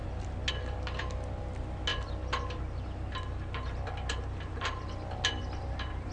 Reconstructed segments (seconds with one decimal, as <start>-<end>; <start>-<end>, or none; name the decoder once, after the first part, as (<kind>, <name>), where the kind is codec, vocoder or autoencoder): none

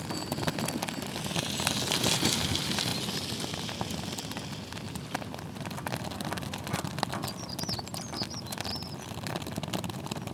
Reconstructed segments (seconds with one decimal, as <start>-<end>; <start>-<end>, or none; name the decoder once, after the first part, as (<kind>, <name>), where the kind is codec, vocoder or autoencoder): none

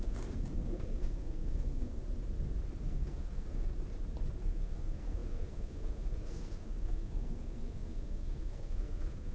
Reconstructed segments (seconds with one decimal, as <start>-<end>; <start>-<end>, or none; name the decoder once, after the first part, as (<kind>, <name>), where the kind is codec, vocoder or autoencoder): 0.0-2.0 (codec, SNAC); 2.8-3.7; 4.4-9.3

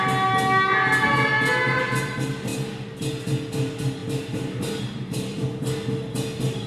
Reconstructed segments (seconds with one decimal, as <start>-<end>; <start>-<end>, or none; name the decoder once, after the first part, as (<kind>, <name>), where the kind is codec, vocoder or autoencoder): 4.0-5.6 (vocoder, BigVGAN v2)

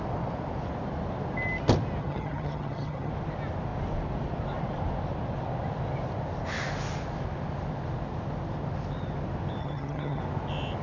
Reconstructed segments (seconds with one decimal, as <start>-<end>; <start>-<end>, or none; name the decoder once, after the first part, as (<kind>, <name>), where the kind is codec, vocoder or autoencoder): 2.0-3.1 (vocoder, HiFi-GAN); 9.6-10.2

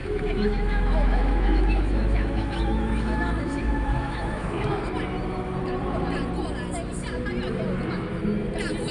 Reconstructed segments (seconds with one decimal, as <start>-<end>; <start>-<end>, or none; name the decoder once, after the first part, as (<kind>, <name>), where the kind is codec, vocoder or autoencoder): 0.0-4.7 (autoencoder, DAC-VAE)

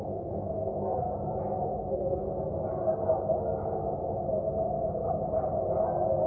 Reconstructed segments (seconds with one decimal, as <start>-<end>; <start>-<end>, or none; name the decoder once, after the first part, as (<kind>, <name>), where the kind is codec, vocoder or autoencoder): 0.0-1.1 (codec, SNAC); 1.9-2.3

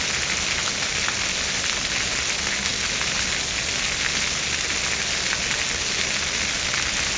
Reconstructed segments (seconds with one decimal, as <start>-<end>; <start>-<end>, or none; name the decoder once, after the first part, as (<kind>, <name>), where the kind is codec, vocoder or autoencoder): none